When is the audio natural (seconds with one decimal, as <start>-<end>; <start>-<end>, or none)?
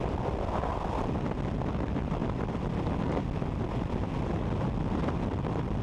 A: 0.0-2.2; 3.2-5.8